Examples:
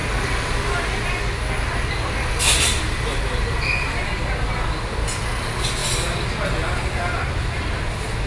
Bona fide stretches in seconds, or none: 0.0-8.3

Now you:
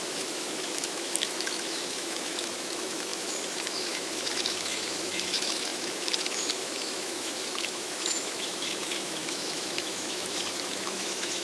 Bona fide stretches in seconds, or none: none

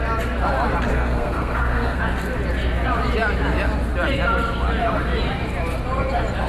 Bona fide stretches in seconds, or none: 0.0-0.9; 2.0-6.5

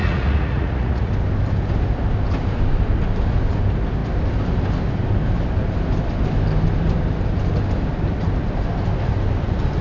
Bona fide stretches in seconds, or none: 1.1-9.8

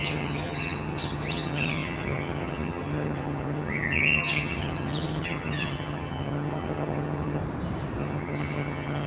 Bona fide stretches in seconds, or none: 7.4-8.0

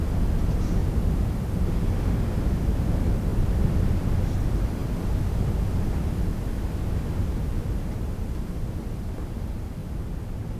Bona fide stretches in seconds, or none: 0.0-3.3; 3.9-10.6